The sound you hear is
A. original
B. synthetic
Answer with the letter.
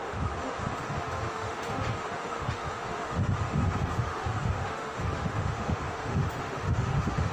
B